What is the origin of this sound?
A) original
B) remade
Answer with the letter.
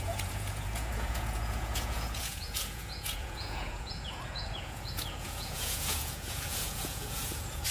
B